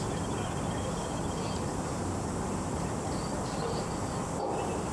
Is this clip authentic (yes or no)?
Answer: no